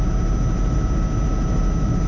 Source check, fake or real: real